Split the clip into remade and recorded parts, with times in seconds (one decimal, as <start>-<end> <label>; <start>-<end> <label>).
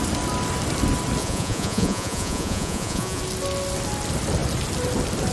0.0-1.2 recorded; 1.2-3.2 remade; 3.2-5.3 recorded